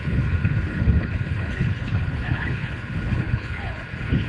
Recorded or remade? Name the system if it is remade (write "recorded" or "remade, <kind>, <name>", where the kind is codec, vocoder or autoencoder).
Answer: remade, codec, HILCodec